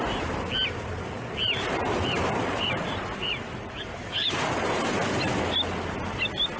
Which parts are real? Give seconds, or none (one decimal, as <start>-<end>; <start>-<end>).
0.0-1.4; 5.4-6.6